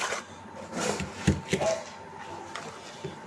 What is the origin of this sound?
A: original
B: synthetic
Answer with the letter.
A